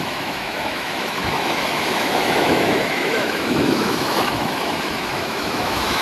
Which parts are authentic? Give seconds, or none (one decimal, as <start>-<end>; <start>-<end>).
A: none